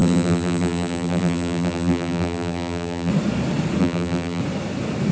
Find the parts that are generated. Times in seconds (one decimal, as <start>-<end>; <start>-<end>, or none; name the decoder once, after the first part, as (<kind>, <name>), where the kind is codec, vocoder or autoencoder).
0.0-3.1 (vocoder, BigVGAN v2); 3.8-4.4